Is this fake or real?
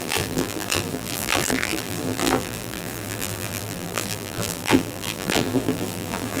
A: fake